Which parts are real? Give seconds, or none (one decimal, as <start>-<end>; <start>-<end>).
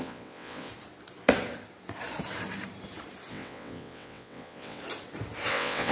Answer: 0.7-3.3; 4.8-5.5